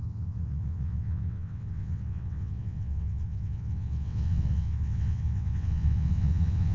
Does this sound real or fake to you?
fake